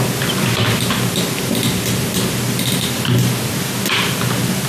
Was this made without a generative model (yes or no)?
yes